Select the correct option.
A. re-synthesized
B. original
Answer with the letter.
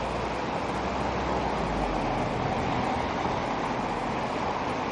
B